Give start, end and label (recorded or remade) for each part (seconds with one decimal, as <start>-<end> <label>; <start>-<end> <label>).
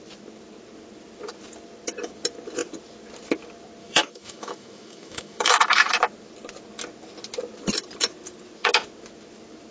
0.0-3.8 recorded; 3.8-5.9 remade; 5.9-9.7 recorded